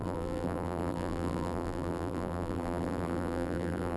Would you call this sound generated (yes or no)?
yes